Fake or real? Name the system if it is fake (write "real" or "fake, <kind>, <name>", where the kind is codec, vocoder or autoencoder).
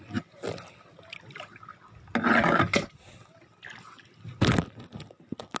real